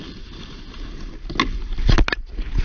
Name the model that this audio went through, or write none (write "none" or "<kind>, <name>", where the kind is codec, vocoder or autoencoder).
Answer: none